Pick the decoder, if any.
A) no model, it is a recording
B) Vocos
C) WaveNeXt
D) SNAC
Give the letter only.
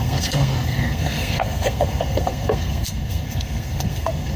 D